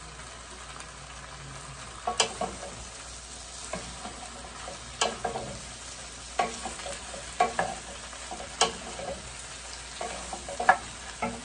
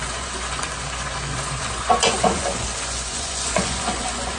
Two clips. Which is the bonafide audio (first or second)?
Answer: first